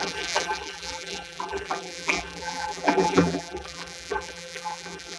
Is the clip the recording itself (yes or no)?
no